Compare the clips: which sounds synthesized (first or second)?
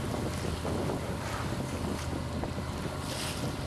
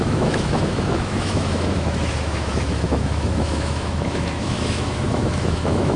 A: second